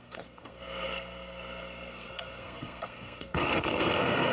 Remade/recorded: remade